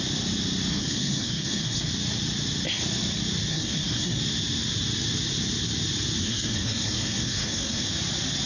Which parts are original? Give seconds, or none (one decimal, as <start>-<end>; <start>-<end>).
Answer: 0.0-0.7; 1.9-3.5; 4.2-6.2; 7.9-8.5